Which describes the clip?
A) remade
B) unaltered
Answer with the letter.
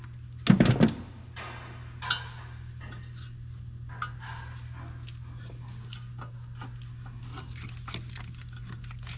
B